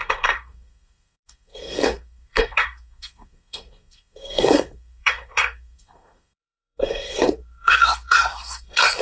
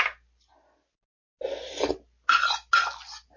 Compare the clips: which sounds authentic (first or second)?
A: second